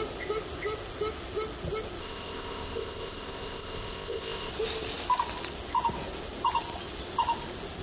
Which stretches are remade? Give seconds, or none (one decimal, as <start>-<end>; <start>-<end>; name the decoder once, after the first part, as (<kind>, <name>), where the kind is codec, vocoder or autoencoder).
2.0-4.5 (codec, ZipCodec)